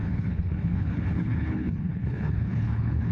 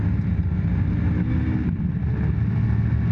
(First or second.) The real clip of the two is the second